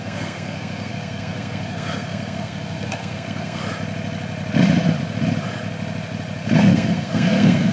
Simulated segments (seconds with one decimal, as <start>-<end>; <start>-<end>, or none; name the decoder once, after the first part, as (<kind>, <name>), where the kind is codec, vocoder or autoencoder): 0.0-3.6 (codec, SNAC); 6.6-7.7